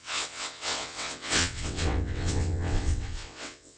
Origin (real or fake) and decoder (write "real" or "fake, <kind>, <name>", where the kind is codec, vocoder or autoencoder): fake, vocoder, WaveNeXt